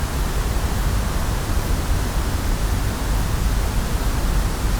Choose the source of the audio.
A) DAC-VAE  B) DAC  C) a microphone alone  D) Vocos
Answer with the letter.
C